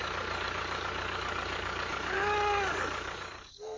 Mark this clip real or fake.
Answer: fake